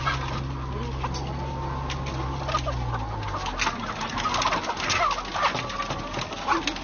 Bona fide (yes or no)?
yes